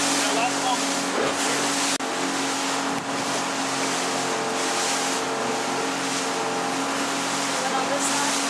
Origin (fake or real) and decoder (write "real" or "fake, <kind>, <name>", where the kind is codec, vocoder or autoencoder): real